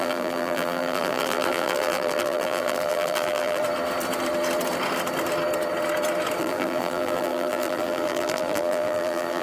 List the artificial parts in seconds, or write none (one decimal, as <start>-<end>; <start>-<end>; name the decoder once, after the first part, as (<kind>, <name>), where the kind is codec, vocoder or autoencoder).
0.0-3.6 (vocoder, BigVGAN v2); 6.4-9.4